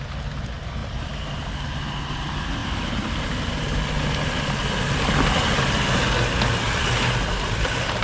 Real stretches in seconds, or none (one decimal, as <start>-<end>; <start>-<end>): 0.0-8.0